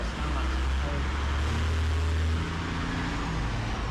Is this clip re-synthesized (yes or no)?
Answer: no